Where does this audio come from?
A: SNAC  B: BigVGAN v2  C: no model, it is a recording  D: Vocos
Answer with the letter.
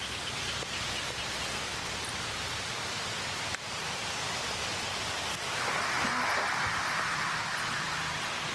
C